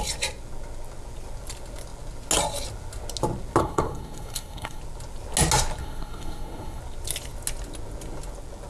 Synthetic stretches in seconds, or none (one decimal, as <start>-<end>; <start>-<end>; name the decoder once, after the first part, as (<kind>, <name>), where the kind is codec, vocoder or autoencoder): 3.6-4.8 (codec, SNAC); 5.8-6.8